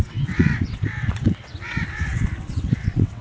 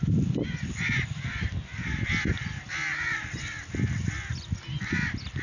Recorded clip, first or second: second